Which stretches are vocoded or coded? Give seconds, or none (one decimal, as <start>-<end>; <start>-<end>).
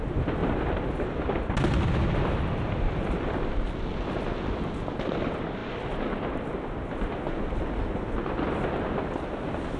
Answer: none